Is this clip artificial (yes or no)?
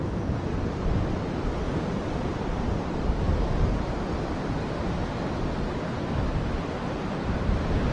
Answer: no